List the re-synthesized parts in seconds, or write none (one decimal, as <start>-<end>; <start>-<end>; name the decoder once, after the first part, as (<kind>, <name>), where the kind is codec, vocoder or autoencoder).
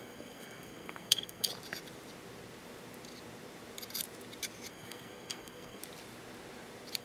0.0-1.5 (codec, SNAC); 4.7-5.8